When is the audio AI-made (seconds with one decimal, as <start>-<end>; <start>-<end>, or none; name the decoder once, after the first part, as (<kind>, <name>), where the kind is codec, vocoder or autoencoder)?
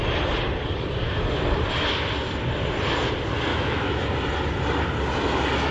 3.5-4.0 (autoencoder, DAC-VAE)